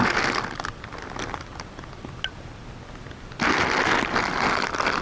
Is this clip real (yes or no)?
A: yes